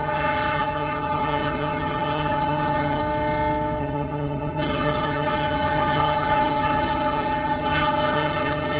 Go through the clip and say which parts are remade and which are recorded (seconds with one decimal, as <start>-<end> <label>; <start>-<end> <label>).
0.0-3.0 remade; 3.0-3.8 recorded; 3.8-8.8 remade